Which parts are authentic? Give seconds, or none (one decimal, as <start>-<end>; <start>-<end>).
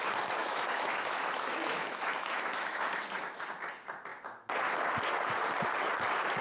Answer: 0.0-0.4; 3.0-6.4